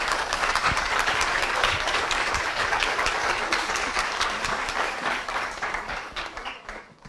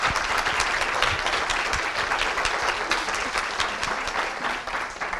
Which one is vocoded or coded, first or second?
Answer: first